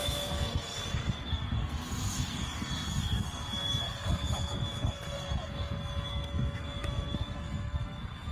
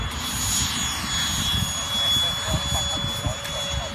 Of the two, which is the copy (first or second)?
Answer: first